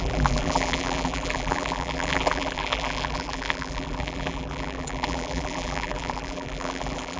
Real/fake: fake